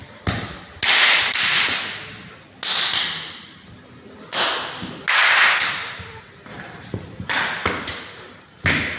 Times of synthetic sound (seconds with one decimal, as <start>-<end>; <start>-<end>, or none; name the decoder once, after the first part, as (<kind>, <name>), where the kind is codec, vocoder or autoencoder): none